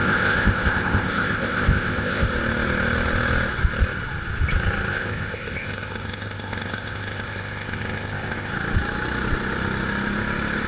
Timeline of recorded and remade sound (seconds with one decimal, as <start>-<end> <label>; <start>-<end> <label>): 0.0-2.3 remade; 2.3-4.9 recorded; 4.9-8.5 remade; 8.5-10.7 recorded